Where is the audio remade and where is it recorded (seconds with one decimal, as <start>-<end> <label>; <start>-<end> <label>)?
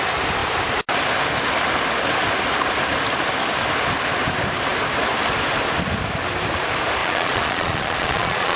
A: 0.0-7.0 recorded; 7.0-8.6 remade